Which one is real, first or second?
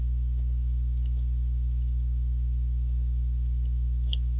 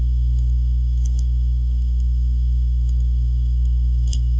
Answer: first